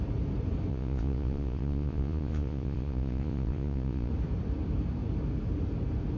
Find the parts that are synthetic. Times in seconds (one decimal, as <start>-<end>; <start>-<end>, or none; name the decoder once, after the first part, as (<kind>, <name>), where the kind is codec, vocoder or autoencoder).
0.7-4.1 (vocoder, Vocos)